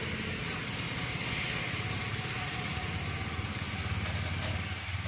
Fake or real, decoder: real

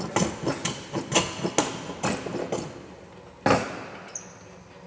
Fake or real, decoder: real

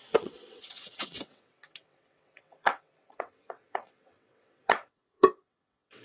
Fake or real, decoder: fake, vocoder, WaveNeXt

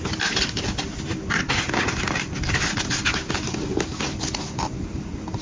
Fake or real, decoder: real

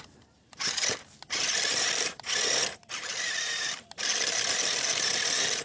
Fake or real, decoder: fake, vocoder, BigVGAN v2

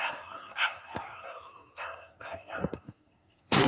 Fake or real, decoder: fake, codec, SNAC